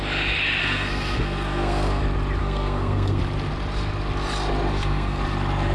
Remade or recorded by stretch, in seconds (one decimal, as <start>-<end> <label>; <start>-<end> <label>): 0.0-0.6 recorded; 0.6-2.0 remade; 2.0-2.4 recorded; 2.4-3.2 remade; 3.2-4.7 recorded; 4.7-5.2 remade; 5.2-5.7 recorded